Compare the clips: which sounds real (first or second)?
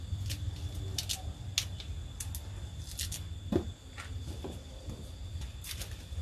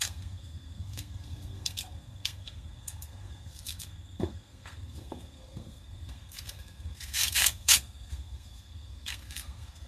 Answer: first